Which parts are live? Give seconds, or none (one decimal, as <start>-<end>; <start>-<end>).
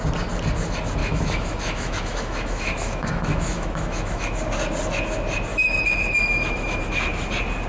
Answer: 0.0-1.0; 4.4-5.5; 6.8-7.7